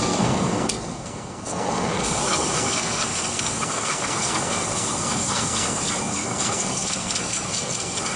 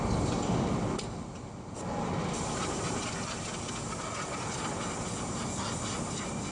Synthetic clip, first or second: first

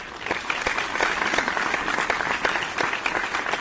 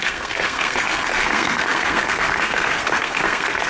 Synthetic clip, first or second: second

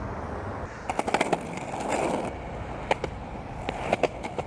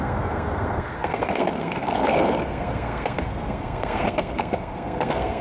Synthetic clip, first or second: second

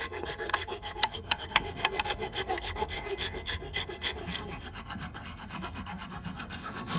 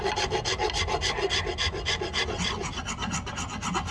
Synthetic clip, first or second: first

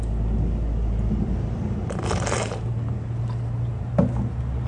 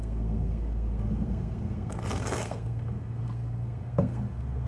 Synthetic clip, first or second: second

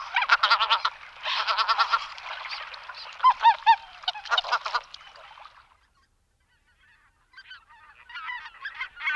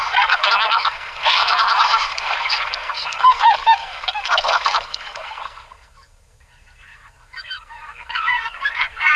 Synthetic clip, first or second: second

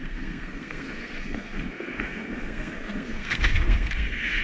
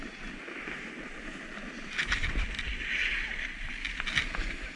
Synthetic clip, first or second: first